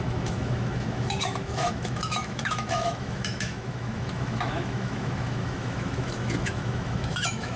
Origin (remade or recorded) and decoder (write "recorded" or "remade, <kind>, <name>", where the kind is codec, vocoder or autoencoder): remade, autoencoder, DAC-VAE